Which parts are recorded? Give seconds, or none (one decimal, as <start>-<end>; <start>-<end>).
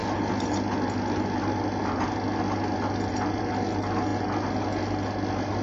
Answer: 0.0-5.6